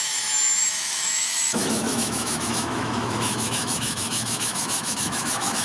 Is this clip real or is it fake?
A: fake